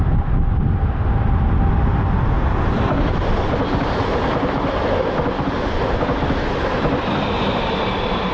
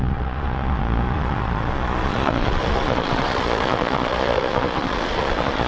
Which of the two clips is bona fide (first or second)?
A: first